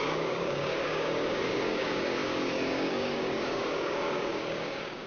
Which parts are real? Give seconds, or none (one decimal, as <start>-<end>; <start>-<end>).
none